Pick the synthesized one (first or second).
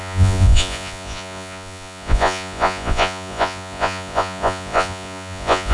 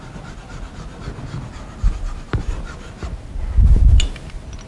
first